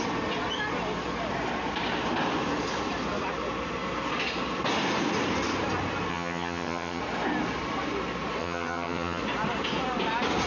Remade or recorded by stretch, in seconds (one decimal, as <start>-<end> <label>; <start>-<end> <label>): 0.0-6.1 recorded; 6.1-7.0 remade; 7.0-8.4 recorded; 8.4-9.2 remade; 9.2-10.5 recorded